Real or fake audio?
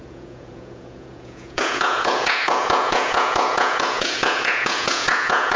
fake